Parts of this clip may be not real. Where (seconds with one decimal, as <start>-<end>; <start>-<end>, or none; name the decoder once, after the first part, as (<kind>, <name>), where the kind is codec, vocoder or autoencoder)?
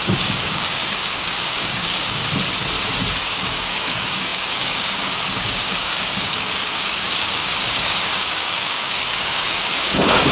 0.0-2.2 (codec, DAC); 3.3-10.3